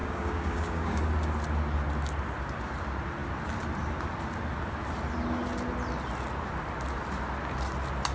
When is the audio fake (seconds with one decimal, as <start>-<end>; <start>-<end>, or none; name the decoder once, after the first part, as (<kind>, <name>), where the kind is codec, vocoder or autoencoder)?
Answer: 0.0-1.0 (codec, DAC)